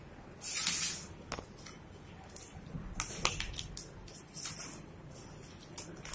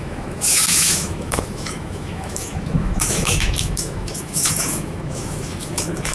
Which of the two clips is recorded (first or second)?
first